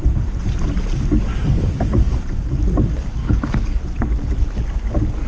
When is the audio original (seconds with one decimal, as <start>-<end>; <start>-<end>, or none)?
0.0-1.3; 2.1-3.2; 3.8-5.3